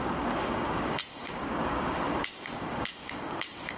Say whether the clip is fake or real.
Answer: fake